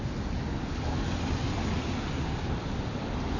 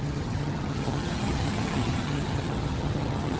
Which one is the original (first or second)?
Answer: first